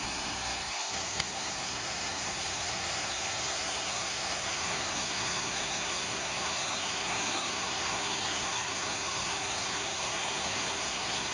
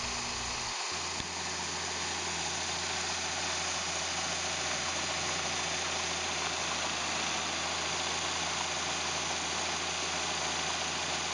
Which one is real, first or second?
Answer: second